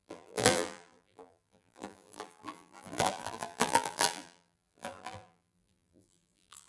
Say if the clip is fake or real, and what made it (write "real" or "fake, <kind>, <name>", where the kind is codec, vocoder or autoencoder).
fake, vocoder, BigVGAN v2